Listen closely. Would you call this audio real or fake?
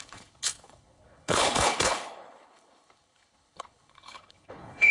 fake